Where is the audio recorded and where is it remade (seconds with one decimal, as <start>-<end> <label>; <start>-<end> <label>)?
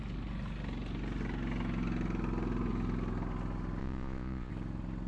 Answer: 0.0-3.8 recorded; 3.8-4.5 remade; 4.5-5.1 recorded